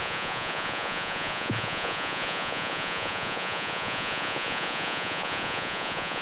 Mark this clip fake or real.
fake